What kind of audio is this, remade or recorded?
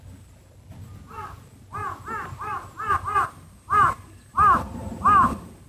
recorded